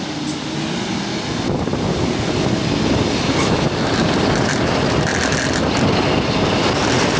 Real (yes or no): yes